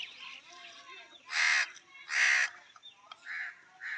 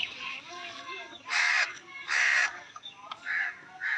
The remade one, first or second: second